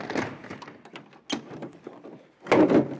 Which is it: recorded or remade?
recorded